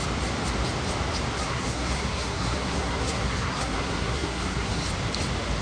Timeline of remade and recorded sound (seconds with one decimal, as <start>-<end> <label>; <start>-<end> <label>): 0.0-1.4 recorded; 1.4-4.8 remade; 4.8-5.6 recorded